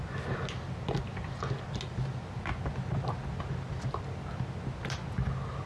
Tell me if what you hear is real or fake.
real